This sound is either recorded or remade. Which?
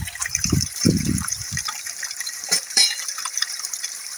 remade